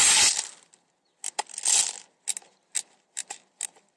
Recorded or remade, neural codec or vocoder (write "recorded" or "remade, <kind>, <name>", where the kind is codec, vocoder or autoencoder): recorded